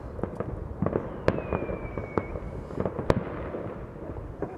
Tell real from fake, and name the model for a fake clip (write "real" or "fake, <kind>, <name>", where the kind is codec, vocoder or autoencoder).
real